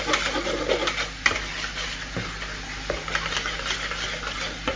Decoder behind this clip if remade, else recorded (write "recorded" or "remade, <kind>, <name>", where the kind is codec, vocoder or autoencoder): recorded